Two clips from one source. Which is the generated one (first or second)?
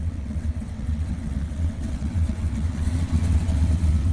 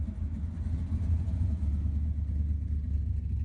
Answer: first